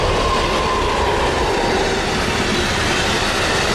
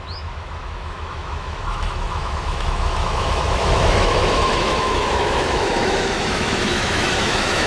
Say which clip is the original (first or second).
first